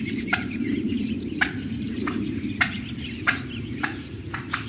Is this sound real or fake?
fake